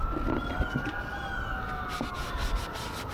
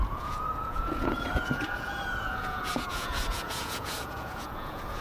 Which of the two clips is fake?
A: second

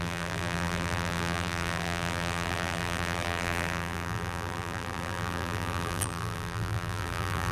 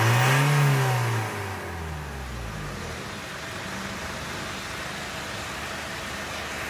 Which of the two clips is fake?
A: first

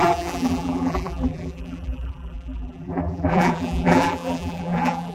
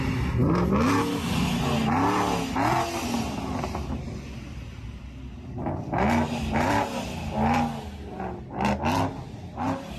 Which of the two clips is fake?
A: first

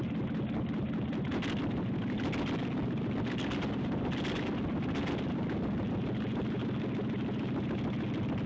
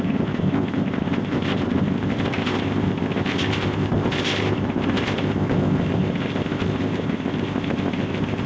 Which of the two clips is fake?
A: second